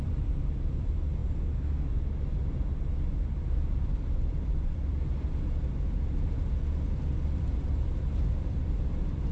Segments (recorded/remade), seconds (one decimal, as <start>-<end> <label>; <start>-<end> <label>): 0.0-1.2 remade; 1.2-3.4 recorded; 3.4-4.9 remade; 4.9-7.1 recorded; 7.1-9.3 remade